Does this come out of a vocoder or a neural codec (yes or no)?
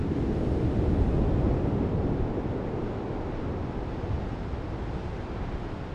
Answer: no